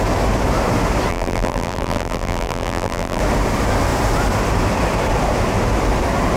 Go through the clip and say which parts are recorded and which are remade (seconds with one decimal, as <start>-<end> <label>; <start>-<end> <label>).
0.0-1.1 recorded; 1.1-3.2 remade; 3.2-6.4 recorded